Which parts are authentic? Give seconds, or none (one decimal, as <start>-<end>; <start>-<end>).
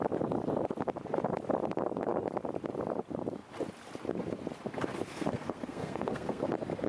0.0-5.1; 6.5-6.9